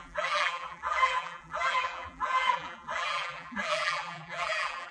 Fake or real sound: fake